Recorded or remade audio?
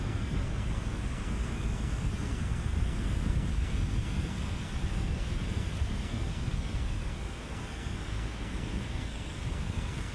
remade